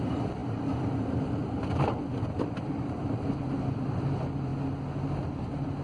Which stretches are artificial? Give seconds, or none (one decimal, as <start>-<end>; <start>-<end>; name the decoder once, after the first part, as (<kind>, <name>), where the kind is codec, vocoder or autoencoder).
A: 0.0-0.4 (vocoder, BigVGAN v2); 1.6-4.5; 5.3-5.8